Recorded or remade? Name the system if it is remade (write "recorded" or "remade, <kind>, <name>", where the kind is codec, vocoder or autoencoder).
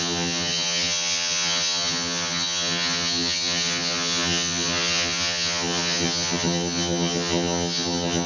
remade, vocoder, HiFi-GAN